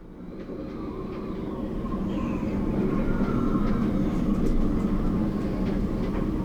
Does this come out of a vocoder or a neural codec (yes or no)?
no